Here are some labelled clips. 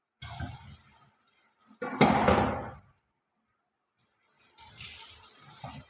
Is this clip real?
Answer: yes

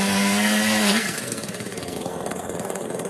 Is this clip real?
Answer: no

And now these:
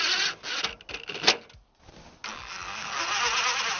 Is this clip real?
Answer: yes